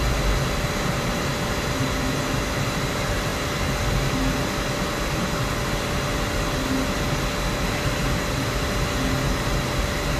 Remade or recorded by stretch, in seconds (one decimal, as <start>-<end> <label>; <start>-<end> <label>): 0.0-10.2 recorded